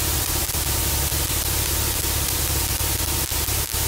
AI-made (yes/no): yes